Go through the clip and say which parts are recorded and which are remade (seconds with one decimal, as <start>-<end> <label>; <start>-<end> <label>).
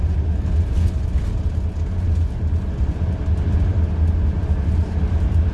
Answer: 0.0-2.2 recorded; 2.2-4.0 remade; 4.0-5.5 recorded